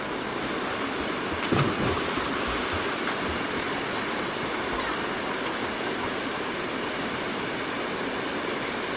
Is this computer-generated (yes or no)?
no